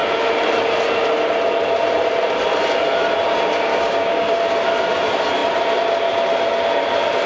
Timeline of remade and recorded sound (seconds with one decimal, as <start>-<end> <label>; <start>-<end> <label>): 0.0-3.7 recorded; 3.7-4.4 remade; 4.4-7.3 recorded